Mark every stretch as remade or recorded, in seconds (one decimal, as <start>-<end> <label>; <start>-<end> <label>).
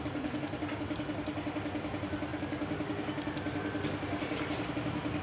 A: 0.0-5.2 recorded